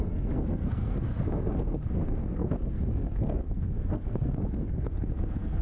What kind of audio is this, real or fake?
fake